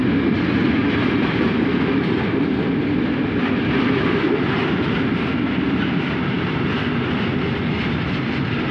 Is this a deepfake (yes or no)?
no